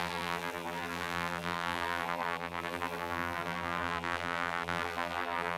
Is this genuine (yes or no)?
no